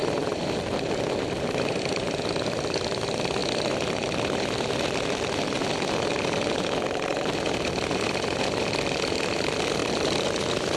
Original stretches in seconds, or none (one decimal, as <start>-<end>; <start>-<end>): 1.8-9.8; 10.4-10.8